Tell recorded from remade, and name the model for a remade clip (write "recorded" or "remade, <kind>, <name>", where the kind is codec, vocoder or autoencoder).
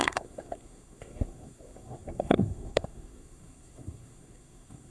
remade, codec, SNAC